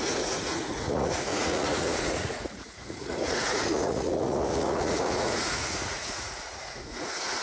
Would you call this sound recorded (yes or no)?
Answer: no